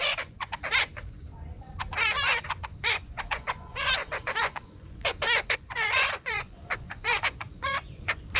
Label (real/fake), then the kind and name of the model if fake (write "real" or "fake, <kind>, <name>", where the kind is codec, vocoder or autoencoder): fake, vocoder, Vocos